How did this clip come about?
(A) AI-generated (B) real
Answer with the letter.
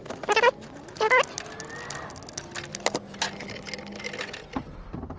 B